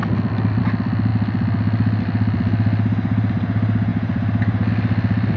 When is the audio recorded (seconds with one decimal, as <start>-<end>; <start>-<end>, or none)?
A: 0.0-5.4